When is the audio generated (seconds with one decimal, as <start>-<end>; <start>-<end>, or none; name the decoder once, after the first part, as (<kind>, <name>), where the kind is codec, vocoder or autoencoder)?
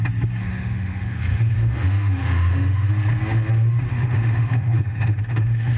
0.4-2.9 (autoencoder, DAC-VAE); 3.9-5.8